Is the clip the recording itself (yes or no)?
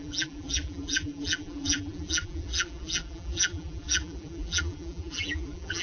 no